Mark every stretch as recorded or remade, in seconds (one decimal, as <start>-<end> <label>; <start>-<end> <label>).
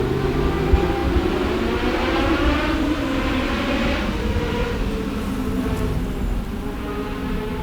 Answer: 0.0-7.6 recorded